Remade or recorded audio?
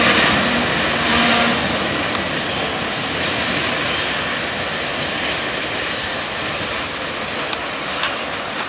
recorded